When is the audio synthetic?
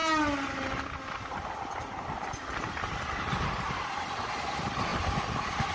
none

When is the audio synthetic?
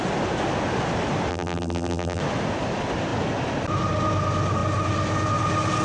1.3-2.2 (vocoder, BigVGAN v2)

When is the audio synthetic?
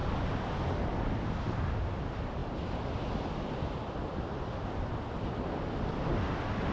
none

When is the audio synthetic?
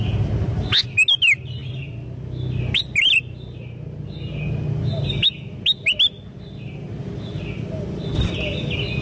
none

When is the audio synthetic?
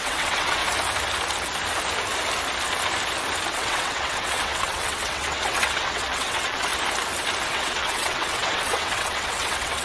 0.0-0.6 (vocoder, WaveNeXt); 3.5-6.7; 7.5-9.8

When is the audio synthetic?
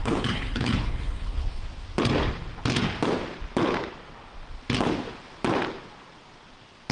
0.0-1.6 (codec, HILCodec)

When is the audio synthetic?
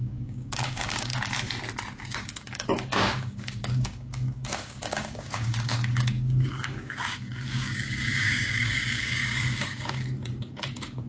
0.0-1.1 (codec, DAC); 2.0-11.1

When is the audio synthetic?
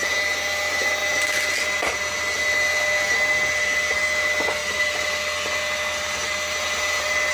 4.6-5.4 (vocoder, BigVGAN v2)